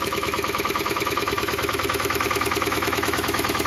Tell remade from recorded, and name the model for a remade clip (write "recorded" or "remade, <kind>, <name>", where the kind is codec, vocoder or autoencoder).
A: remade, autoencoder, DAC-VAE